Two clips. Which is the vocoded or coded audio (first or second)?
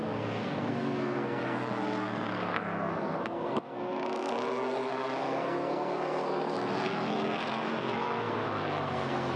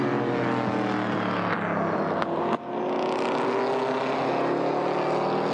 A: first